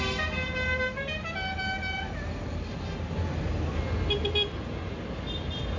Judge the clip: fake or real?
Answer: real